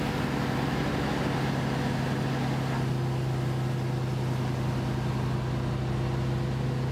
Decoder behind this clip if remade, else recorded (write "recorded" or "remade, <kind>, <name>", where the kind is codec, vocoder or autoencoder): recorded